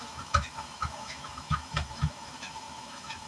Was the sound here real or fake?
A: fake